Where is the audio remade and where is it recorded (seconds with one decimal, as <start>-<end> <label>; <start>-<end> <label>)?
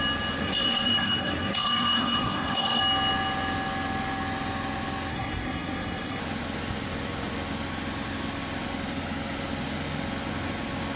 0.0-0.4 recorded; 0.4-2.8 remade; 2.8-5.1 recorded; 5.1-6.2 remade; 6.2-11.0 recorded